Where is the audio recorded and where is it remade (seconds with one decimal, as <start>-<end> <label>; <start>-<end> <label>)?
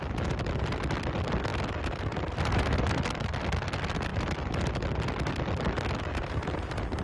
0.0-7.0 recorded